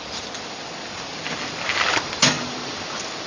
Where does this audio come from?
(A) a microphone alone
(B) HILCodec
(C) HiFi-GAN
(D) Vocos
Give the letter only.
A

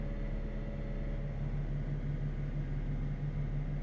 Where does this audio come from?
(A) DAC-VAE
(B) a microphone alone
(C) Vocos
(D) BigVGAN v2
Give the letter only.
B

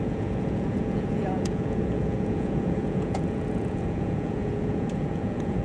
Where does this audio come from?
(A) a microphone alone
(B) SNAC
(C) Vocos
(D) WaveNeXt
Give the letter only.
C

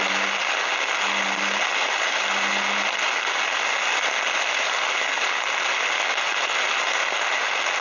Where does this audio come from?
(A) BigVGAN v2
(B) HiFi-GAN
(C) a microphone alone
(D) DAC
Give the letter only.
C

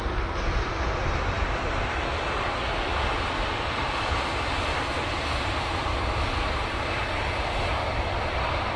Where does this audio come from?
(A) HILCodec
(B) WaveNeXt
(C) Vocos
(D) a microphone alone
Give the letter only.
D